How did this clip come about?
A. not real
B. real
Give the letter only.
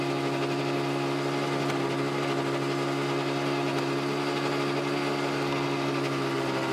B